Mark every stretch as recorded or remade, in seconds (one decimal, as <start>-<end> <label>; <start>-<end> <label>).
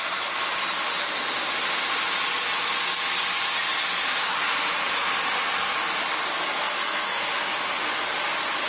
0.0-6.5 recorded; 6.5-7.3 remade; 7.3-8.7 recorded